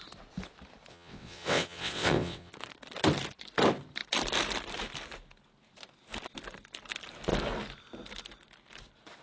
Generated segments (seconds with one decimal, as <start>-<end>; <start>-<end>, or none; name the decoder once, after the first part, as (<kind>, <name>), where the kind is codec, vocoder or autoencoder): 0.9-2.5 (vocoder, WaveNeXt)